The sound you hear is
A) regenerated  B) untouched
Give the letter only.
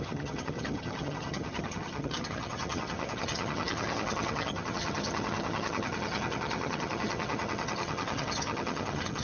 A